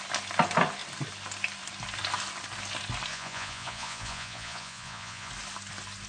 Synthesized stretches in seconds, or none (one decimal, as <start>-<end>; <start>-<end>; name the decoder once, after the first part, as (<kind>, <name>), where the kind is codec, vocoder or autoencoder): 3.1-5.3 (vocoder, Vocos)